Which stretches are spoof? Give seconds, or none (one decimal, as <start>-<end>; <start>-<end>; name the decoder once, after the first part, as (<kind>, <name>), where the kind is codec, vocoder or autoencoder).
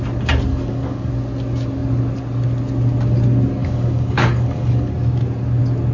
0.5-1.1 (codec, DAC); 3.6-4.9